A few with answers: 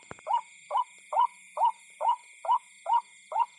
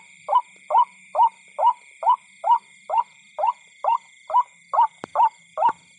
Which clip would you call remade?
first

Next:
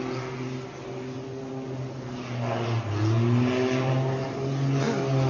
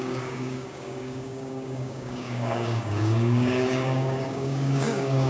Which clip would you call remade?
second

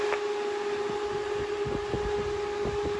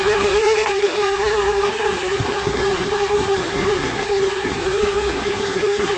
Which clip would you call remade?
second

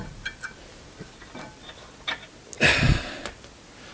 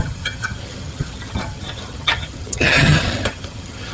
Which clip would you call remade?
second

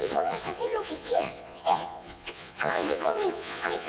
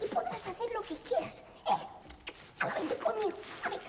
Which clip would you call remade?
first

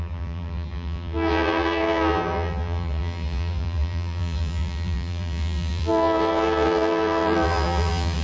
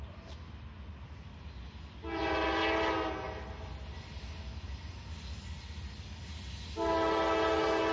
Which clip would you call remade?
first